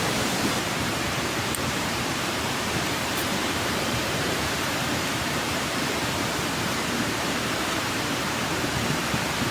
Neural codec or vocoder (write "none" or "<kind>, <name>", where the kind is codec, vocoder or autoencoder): vocoder, BigVGAN v2